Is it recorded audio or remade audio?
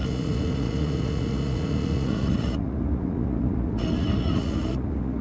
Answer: remade